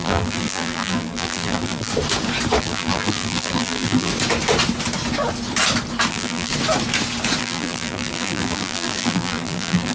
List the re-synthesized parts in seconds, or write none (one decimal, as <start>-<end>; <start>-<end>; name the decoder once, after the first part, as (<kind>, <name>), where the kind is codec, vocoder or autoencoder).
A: 0.0-1.9 (vocoder, BigVGAN v2); 2.6-4.1; 6.1-6.5; 7.4-9.9